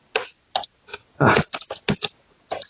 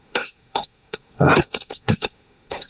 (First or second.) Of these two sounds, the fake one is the second